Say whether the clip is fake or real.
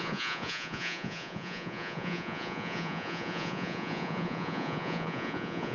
fake